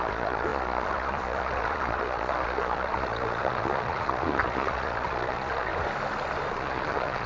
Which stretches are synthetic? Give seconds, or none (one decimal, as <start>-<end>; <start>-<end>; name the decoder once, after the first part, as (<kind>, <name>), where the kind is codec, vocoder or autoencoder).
0.0-5.7 (vocoder, Vocos); 6.5-7.3